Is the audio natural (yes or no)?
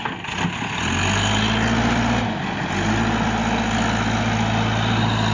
yes